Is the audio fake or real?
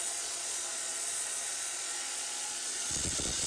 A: fake